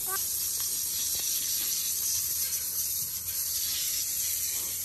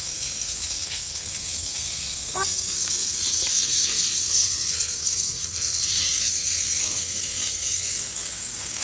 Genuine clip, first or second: first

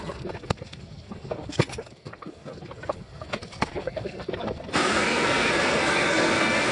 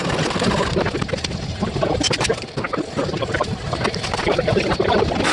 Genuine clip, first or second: second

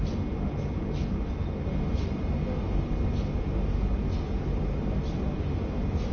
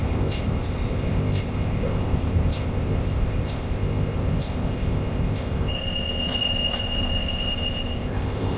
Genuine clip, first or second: first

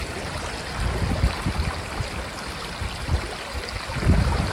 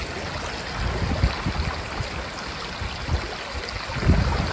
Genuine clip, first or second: second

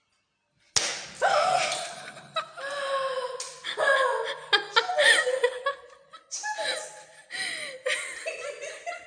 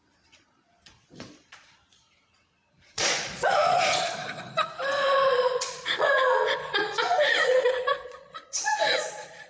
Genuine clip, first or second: first